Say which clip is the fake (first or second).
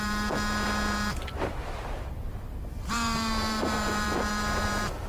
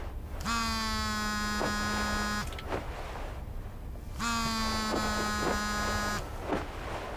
first